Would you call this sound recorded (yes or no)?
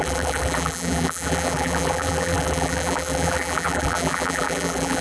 no